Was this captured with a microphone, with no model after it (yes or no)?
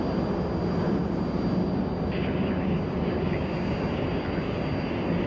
yes